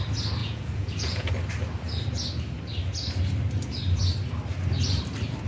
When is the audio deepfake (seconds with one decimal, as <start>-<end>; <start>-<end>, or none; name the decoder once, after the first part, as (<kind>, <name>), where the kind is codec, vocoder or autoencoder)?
0.4-1.3 (vocoder, Vocos)